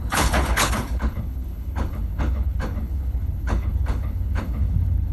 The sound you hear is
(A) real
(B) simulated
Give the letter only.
B